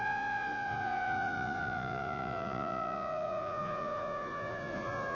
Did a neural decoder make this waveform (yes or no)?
yes